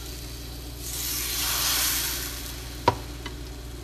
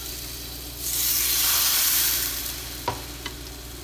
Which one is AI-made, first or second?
second